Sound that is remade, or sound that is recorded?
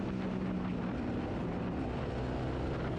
recorded